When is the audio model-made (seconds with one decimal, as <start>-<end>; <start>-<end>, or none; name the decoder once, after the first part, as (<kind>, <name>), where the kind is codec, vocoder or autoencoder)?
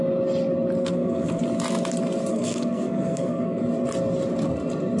0.8-1.4 (codec, SNAC); 2.3-3.6